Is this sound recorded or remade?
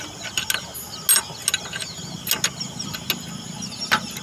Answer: recorded